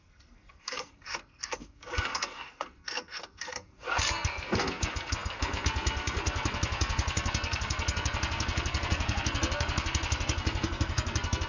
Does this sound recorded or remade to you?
remade